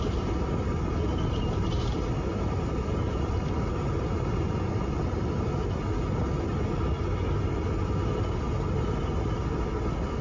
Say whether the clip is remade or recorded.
recorded